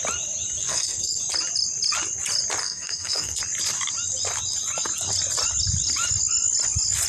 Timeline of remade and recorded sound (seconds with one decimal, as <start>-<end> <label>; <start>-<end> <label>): 0.0-0.6 recorded; 0.6-1.2 remade; 1.2-2.6 recorded; 2.6-3.4 remade; 3.4-7.1 recorded